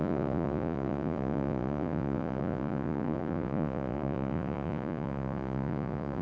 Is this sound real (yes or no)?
no